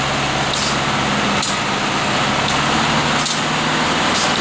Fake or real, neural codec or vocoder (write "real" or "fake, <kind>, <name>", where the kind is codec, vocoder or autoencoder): real